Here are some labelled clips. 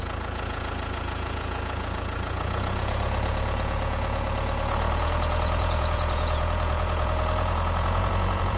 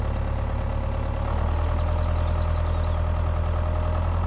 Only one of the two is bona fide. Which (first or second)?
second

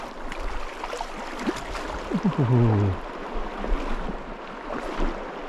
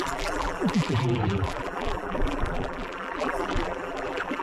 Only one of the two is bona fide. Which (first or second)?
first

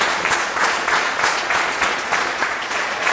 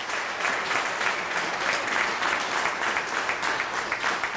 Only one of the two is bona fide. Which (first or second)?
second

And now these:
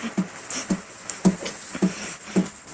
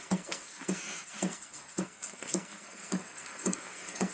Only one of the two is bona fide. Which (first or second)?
first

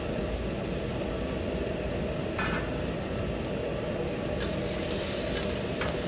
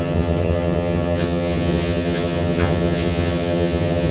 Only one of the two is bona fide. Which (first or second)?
first